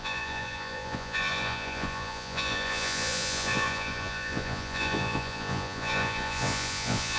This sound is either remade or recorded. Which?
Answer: remade